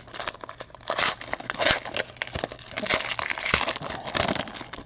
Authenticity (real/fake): real